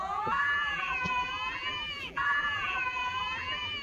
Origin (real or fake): fake